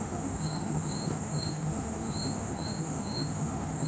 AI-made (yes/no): yes